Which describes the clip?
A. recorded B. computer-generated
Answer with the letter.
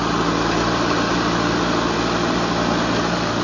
A